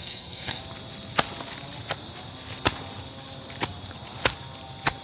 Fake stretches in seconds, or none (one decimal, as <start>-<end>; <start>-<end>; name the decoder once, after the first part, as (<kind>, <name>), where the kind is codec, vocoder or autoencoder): 0.0-0.6 (codec, SNAC)